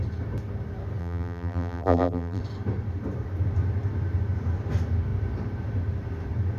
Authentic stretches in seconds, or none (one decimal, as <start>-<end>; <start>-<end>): 0.0-1.0; 2.4-6.6